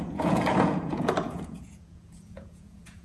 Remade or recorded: remade